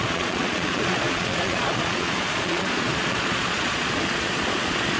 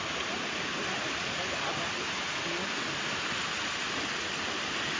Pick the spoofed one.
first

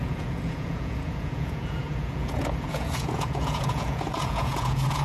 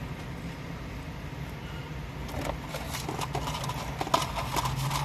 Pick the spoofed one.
first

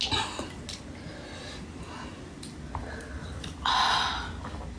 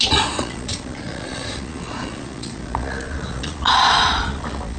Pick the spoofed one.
second